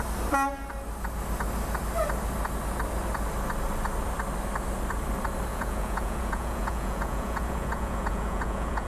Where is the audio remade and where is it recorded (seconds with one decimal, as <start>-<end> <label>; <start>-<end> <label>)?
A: 0.0-5.5 recorded; 5.5-8.9 remade